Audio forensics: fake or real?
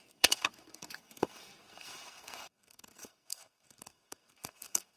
fake